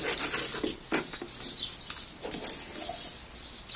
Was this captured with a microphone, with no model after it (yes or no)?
yes